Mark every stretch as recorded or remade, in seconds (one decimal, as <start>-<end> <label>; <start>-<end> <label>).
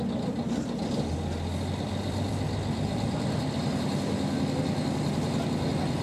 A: 0.0-1.5 recorded; 1.5-5.1 remade; 5.1-6.0 recorded